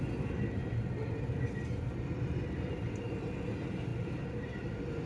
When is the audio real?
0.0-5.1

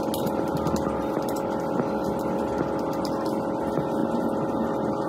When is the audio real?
0.0-5.1

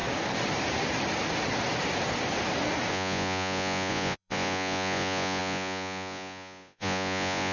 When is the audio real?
0.0-2.9